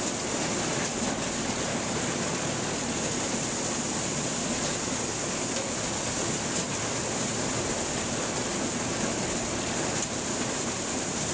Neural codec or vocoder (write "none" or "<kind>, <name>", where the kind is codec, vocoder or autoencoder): none